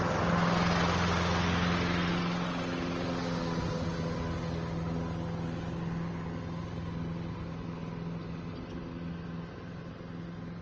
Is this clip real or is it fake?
real